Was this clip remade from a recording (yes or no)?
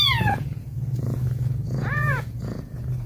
yes